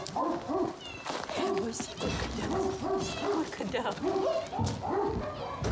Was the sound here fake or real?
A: real